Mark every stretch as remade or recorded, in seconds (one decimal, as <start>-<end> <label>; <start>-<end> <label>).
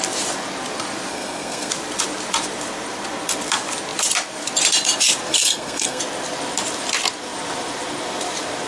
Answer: 0.0-1.1 recorded; 1.1-1.7 remade; 1.7-5.3 recorded; 5.3-6.0 remade; 6.0-8.7 recorded